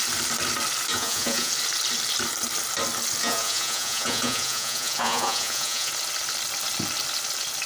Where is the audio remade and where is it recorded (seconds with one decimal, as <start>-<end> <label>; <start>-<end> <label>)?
0.0-0.9 recorded; 0.9-1.5 remade; 1.5-3.2 recorded; 3.2-5.9 remade; 5.9-7.7 recorded